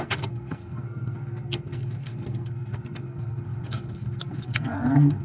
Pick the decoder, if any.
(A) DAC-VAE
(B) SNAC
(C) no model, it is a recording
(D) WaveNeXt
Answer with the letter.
B